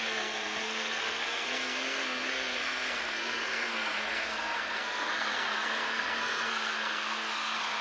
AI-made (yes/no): yes